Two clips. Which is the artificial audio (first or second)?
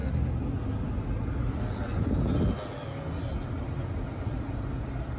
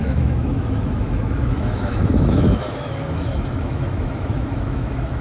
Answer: second